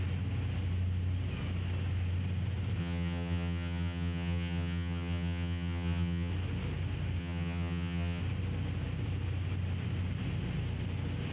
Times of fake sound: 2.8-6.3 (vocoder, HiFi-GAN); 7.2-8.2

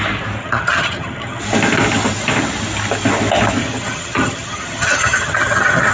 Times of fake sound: 0.4-1.4 (vocoder, HiFi-GAN); 3.6-5.9

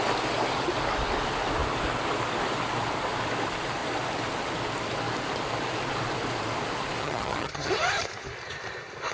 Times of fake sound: 7.0-7.7 (vocoder, HiFi-GAN)

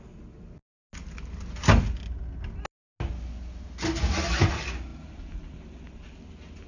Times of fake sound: none

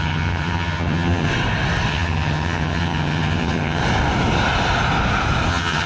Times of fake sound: 0.0-1.3 (vocoder, HiFi-GAN); 1.9-3.8; 5.5-5.9

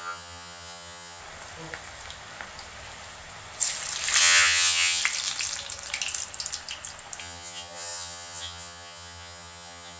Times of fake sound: 0.0-1.2 (vocoder, HiFi-GAN); 4.2-5.0; 7.2-10.0